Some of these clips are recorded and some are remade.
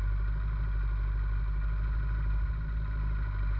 recorded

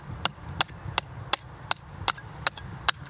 recorded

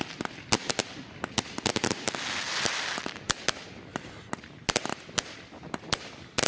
recorded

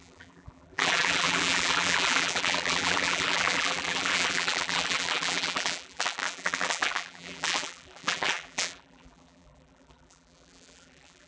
remade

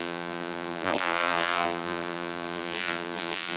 remade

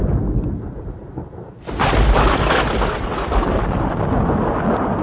recorded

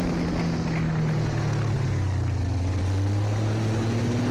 recorded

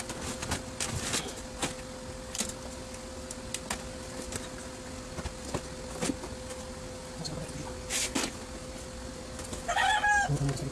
recorded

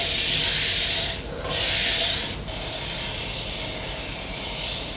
recorded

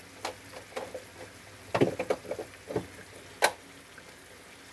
recorded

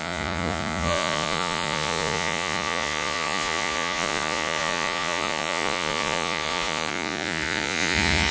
remade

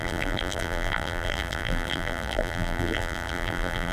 remade